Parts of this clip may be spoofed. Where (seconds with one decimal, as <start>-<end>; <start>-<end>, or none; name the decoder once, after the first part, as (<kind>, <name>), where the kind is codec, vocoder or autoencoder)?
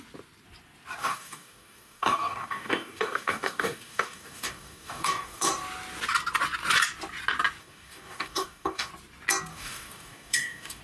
1.0-5.5 (codec, DAC); 7.6-8.9; 9.5-10.8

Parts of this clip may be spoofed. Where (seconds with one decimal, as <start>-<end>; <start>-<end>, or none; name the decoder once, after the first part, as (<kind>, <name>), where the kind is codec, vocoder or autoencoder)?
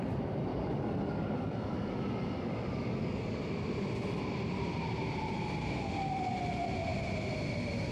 0.5-3.4 (codec, DAC)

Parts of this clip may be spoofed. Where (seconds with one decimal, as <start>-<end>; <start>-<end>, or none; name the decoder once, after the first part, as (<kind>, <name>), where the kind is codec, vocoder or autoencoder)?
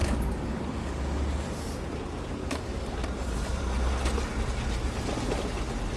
0.0-1.2 (codec, DAC); 2.4-2.9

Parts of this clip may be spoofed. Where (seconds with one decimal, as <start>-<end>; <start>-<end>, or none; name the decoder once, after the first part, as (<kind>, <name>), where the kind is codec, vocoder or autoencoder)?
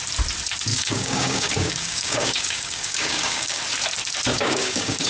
0.7-3.6 (codec, DAC); 4.3-5.1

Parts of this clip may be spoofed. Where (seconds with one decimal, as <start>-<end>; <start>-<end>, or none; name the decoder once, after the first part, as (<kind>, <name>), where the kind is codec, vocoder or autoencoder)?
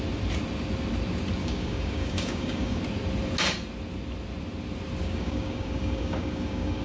1.4-2.8 (codec, DAC); 5.0-6.8